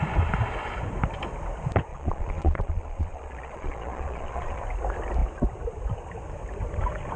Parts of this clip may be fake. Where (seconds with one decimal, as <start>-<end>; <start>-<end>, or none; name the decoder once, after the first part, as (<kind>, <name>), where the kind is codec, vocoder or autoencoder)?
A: 1.9-4.6 (vocoder, Vocos)